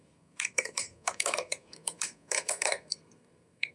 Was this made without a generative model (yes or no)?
no